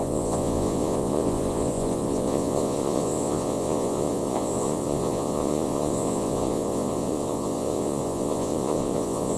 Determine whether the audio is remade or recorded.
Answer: remade